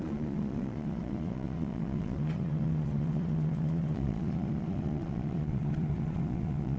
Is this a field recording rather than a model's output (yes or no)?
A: no